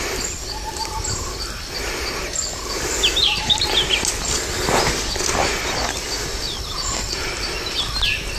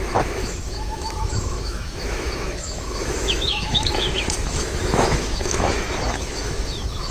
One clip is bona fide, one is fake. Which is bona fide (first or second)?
first